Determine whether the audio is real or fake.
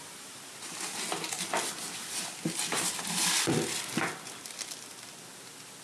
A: real